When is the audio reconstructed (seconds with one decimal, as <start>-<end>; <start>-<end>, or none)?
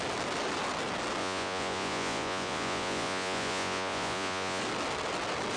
1.2-4.6